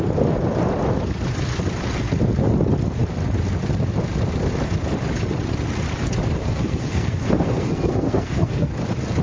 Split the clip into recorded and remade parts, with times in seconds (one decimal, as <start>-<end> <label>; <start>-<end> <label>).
0.0-6.4 recorded; 6.4-8.7 remade; 8.7-9.2 recorded